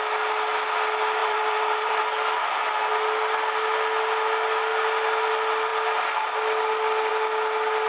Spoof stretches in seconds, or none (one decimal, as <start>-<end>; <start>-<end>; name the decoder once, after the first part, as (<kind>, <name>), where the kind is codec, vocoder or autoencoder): 1.2-2.0 (vocoder, BigVGAN v2)